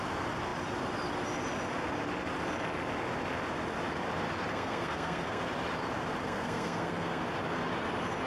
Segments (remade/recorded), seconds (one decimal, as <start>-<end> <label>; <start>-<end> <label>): 0.0-4.5 recorded; 4.5-5.4 remade; 5.4-6.2 recorded; 6.2-7.2 remade; 7.2-8.3 recorded